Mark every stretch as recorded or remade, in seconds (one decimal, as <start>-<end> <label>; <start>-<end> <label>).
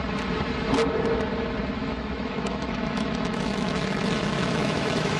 0.0-1.8 recorded; 1.8-5.2 remade